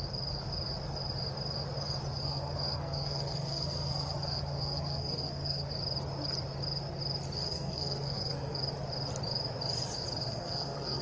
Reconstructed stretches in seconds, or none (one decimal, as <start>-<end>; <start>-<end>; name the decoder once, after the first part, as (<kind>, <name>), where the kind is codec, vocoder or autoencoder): 2.2-5.7 (codec, SNAC); 7.5-8.6; 10.3-11.0